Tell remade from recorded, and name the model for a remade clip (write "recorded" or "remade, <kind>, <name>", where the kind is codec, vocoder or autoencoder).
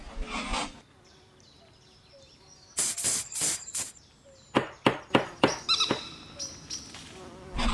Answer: recorded